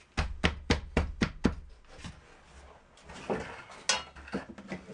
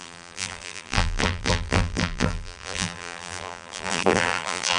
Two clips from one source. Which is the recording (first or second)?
first